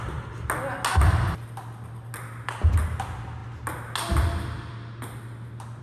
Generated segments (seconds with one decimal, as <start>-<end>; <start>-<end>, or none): none